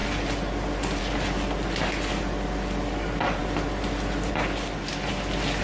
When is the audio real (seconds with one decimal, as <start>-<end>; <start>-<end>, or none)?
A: 0.0-5.6